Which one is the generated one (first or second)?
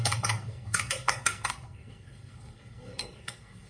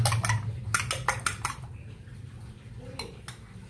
first